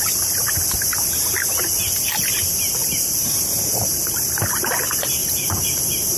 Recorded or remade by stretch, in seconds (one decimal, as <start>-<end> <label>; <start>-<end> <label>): 0.0-2.8 recorded; 2.8-4.5 remade; 4.5-5.2 recorded; 5.2-5.8 remade; 5.8-6.2 recorded